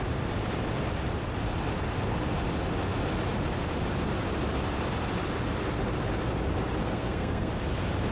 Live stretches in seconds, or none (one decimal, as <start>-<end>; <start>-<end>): 0.0-6.8; 7.5-8.1